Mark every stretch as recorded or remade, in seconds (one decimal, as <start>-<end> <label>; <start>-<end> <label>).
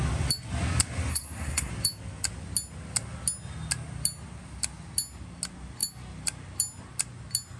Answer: 0.0-1.1 recorded; 1.1-1.7 remade; 1.7-7.6 recorded